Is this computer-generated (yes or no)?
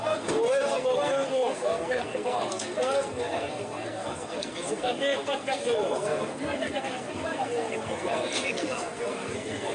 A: yes